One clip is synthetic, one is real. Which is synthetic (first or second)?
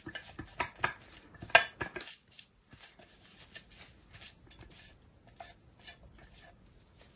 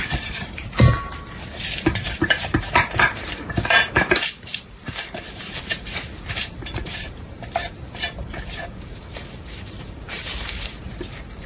second